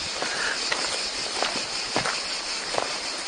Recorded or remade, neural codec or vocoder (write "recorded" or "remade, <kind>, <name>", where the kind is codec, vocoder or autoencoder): recorded